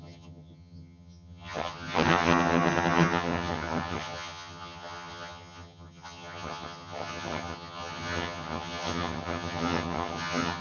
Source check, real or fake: fake